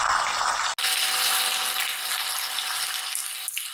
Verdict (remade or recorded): recorded